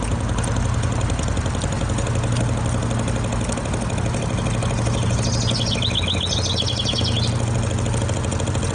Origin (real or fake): real